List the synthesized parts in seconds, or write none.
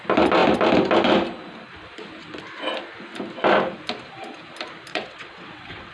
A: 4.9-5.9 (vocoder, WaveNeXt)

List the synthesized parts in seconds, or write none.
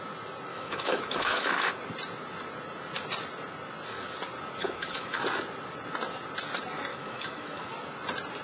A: 0.5-1.7 (autoencoder, DAC-VAE); 4.6-5.2; 6.9-7.7